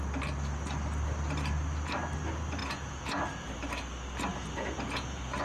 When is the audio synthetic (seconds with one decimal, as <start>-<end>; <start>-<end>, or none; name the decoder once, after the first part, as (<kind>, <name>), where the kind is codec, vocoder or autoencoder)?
2.6-3.5 (vocoder, Vocos); 4.3-5.4